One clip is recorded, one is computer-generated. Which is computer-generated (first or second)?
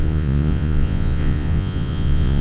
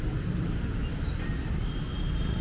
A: first